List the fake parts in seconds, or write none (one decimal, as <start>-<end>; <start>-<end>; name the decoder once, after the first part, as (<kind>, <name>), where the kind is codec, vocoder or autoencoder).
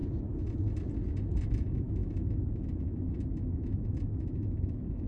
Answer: 1.4-5.1 (autoencoder, DAC-VAE)